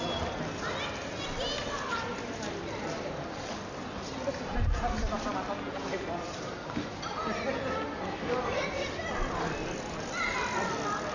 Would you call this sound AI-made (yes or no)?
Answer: no